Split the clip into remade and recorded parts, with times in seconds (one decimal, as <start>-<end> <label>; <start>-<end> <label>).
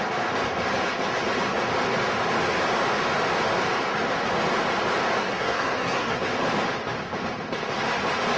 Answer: 0.0-5.2 recorded; 5.2-6.2 remade; 6.2-8.4 recorded